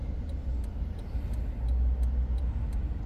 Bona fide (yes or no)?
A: yes